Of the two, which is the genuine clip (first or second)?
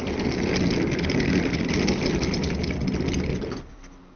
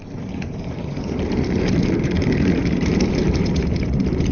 first